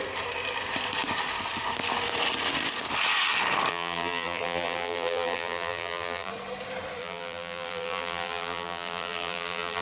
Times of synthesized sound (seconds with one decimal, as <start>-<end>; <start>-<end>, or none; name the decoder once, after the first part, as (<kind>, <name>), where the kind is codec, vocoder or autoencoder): 3.7-6.3 (vocoder, BigVGAN v2); 7.0-9.8